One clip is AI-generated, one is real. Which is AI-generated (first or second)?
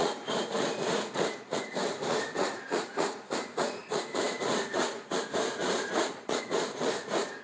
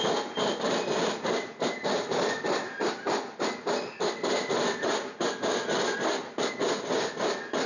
first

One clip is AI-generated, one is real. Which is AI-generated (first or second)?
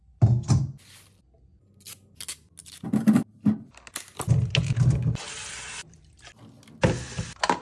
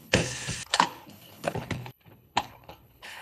second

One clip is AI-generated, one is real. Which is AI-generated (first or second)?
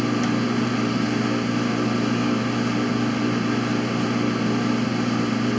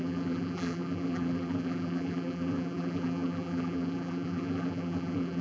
second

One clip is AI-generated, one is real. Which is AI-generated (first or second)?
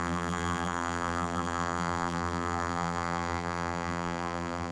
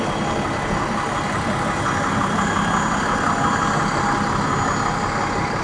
first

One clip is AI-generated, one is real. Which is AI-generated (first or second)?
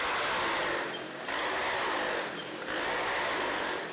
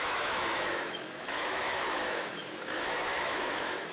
second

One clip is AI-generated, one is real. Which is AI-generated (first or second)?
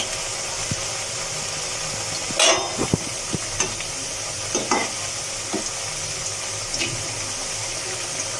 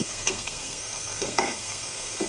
second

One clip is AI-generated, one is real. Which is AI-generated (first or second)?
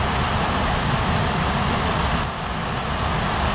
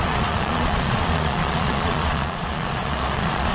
second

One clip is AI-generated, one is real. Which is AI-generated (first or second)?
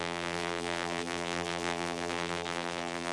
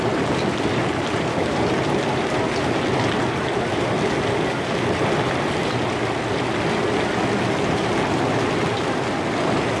first